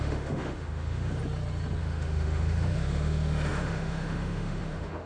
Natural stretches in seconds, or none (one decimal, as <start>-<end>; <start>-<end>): 1.2-1.8